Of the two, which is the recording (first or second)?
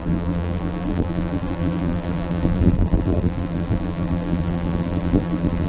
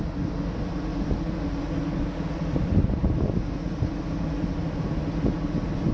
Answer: second